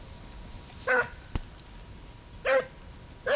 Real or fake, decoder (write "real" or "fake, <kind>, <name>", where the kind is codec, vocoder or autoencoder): real